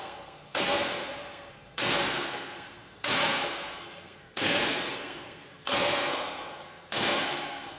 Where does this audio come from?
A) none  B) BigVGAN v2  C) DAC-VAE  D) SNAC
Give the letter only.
D